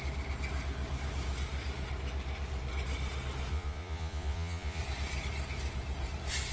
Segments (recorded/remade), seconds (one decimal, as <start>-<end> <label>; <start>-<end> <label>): 0.0-3.5 recorded; 3.5-4.8 remade; 4.8-6.5 recorded